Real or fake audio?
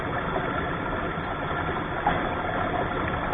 real